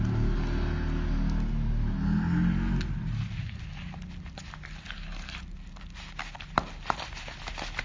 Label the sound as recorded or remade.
recorded